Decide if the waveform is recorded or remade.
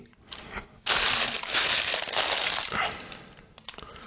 recorded